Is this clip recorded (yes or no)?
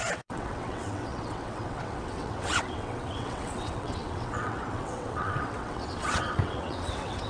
no